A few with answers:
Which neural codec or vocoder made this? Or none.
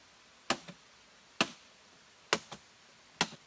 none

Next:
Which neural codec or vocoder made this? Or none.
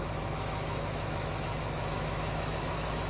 autoencoder, DAC-VAE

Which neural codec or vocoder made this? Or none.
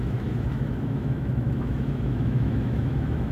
autoencoder, DAC-VAE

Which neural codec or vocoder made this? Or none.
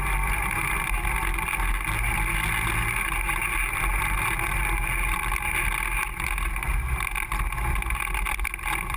none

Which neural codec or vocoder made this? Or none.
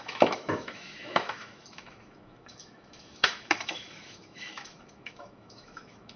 autoencoder, DAC-VAE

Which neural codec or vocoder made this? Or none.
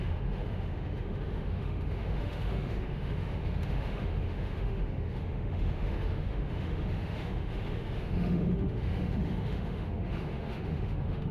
autoencoder, DAC-VAE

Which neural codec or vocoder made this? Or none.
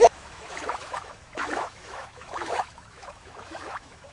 autoencoder, DAC-VAE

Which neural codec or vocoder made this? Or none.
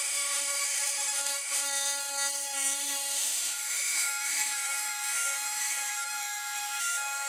autoencoder, DAC-VAE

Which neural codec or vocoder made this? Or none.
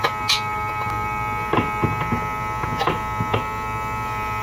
none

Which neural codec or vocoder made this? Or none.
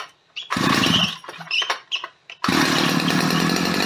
none